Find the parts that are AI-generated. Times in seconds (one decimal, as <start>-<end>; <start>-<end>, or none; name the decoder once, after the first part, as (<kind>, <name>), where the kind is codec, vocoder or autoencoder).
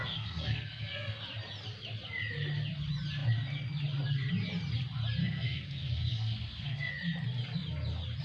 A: 0.0-1.2 (codec, SNAC); 5.2-6.9